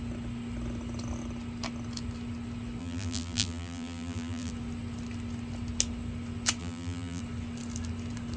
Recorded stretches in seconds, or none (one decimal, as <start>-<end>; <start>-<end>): 0.0-2.8; 4.5-6.6; 7.2-8.4